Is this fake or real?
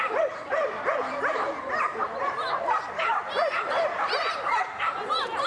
fake